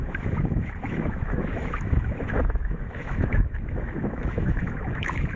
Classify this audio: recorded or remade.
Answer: remade